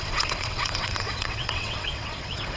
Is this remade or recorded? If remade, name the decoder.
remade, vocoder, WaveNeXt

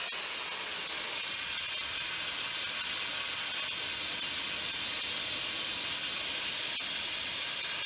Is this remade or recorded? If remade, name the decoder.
recorded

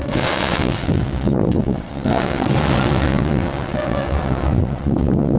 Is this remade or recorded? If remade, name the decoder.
remade, vocoder, WaveNeXt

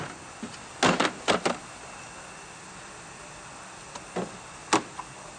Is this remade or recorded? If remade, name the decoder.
recorded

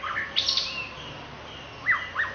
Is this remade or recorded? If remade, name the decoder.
recorded